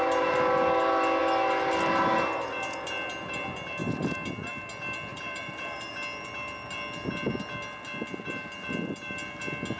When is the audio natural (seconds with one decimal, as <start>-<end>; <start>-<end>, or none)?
0.0-5.1; 5.9-9.8